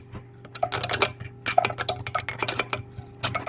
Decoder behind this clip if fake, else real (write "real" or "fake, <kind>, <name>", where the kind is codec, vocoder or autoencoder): real